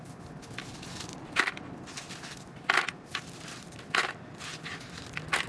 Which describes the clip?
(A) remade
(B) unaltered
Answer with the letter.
B